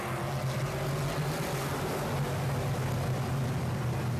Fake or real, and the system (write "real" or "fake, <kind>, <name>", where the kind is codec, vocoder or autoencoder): real